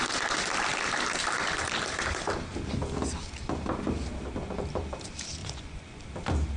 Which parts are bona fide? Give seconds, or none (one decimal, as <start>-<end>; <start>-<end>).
0.0-5.4; 6.0-6.6